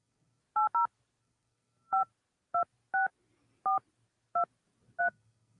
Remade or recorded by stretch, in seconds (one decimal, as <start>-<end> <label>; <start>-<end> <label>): 0.0-0.4 remade; 0.4-1.2 recorded; 1.2-2.1 remade; 2.1-5.0 recorded; 5.0-5.6 remade